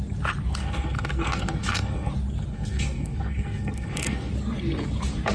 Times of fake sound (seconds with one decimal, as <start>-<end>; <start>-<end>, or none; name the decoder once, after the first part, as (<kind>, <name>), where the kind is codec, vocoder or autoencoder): 0.6-2.1 (codec, SNAC); 2.5-4.3